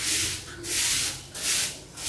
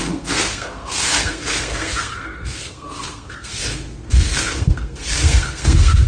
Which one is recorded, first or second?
first